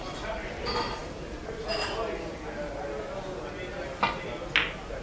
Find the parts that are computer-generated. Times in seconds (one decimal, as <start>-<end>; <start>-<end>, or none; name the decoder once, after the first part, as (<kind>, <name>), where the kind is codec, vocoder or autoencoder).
none